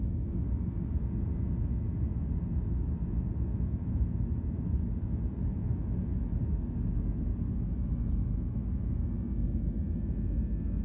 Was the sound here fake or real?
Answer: real